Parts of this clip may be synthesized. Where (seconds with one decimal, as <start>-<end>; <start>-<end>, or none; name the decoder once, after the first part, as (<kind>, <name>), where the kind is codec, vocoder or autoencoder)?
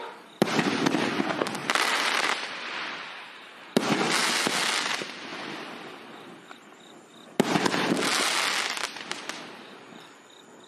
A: 1.6-2.9 (vocoder, BigVGAN v2)